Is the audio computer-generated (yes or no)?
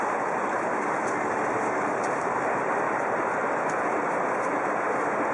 no